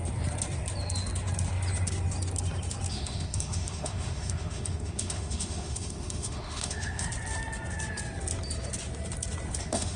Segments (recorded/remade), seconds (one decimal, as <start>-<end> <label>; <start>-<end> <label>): 0.0-2.9 recorded; 2.9-7.1 remade; 7.1-9.6 recorded; 9.6-10.0 remade